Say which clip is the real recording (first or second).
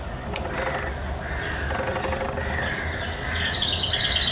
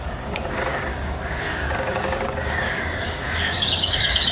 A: first